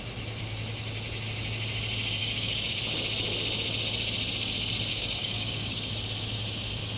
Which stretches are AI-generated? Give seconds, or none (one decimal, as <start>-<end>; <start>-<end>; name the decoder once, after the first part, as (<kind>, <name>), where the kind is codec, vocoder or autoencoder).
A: 2.2-2.7 (codec, DAC); 4.9-5.9